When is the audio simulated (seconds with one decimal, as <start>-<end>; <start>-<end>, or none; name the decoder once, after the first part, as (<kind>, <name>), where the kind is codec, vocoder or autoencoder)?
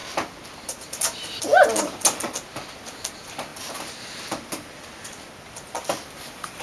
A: 0.6-1.5 (vocoder, BigVGAN v2); 2.9-6.6